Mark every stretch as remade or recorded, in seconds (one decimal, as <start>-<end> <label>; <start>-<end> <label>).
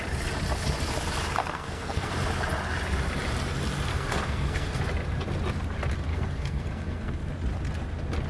0.0-1.4 recorded; 1.4-2.1 remade; 2.1-3.9 recorded; 3.9-4.8 remade; 4.8-6.1 recorded; 6.1-7.3 remade; 7.3-8.3 recorded